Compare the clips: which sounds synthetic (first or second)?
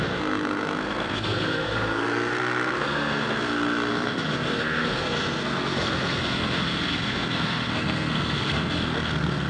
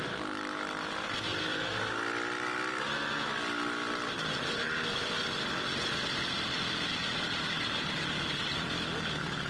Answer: first